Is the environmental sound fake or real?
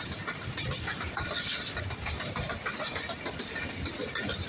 real